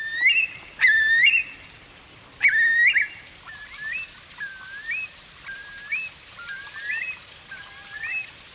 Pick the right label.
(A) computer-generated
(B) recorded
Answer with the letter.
B